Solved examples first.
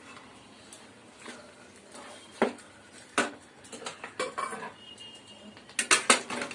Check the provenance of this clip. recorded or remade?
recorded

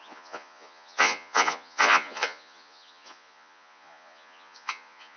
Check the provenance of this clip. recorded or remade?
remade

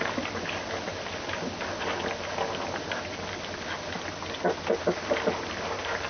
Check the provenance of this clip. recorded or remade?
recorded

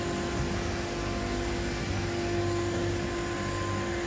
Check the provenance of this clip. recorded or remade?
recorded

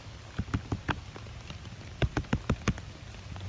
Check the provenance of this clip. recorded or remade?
recorded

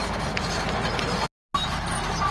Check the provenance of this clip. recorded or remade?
recorded